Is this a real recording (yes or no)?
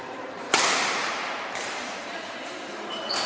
no